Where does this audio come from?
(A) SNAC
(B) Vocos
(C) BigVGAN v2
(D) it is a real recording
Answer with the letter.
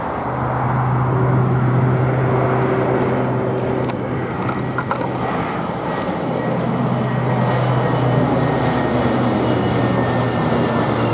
D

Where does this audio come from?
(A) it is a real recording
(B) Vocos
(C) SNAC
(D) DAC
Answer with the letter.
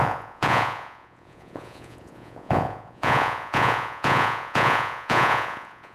B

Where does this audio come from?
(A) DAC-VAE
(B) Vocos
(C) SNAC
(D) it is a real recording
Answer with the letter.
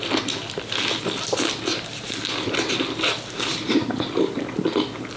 D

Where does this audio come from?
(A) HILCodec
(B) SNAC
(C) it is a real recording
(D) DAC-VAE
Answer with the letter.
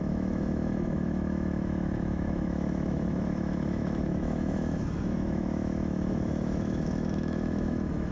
D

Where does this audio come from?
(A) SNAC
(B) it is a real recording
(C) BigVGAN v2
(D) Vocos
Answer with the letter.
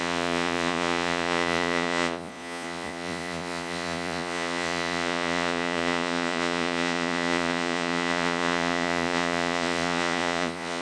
D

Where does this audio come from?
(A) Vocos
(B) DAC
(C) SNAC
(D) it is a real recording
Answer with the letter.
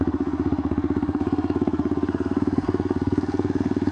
C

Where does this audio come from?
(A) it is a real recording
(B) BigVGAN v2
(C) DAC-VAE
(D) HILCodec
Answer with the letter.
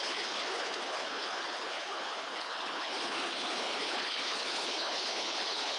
D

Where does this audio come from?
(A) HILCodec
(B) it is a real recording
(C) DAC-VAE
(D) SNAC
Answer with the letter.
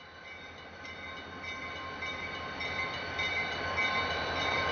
B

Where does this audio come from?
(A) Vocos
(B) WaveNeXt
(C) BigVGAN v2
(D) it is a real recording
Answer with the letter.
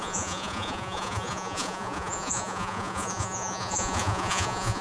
A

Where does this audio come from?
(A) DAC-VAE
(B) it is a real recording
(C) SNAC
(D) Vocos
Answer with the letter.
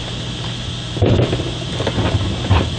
B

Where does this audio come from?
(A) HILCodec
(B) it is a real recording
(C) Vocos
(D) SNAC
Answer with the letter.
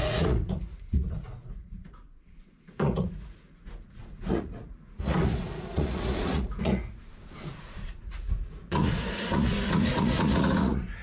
C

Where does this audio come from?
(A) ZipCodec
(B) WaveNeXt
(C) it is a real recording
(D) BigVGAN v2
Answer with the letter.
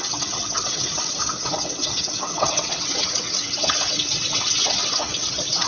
B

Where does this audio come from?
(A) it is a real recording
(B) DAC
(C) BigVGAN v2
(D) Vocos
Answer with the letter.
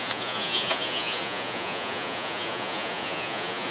D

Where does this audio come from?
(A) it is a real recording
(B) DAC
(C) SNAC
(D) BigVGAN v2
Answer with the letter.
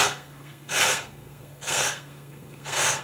C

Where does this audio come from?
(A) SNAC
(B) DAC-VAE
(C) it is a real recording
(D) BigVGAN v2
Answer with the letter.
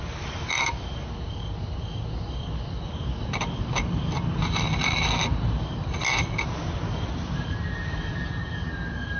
C